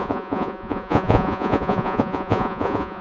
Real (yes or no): no